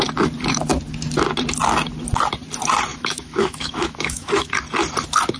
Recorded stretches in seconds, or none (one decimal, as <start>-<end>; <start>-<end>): 0.0-2.9; 4.5-5.4